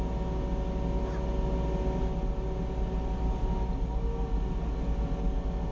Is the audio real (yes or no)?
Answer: yes